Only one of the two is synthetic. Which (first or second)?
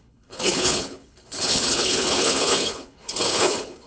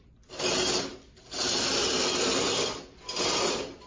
first